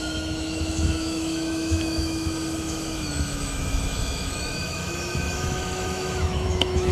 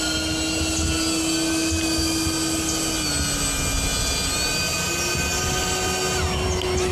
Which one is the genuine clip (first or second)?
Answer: second